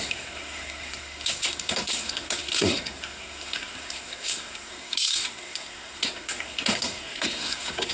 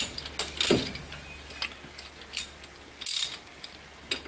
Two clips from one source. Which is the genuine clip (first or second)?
second